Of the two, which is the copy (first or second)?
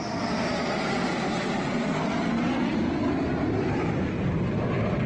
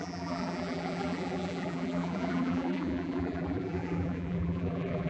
second